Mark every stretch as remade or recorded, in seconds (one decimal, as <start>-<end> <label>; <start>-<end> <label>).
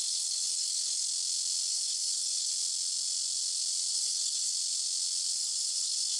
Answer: 0.0-1.1 remade; 1.1-1.7 recorded; 1.7-2.5 remade; 2.5-3.9 recorded; 3.9-4.5 remade; 4.5-5.3 recorded; 5.3-6.2 remade